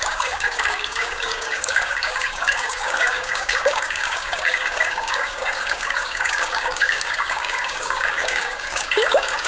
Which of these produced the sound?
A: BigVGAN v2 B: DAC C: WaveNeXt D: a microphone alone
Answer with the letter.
B